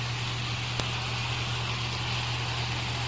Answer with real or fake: real